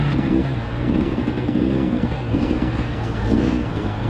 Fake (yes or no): yes